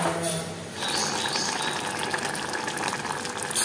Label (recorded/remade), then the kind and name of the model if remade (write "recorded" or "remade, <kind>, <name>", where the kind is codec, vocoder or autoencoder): recorded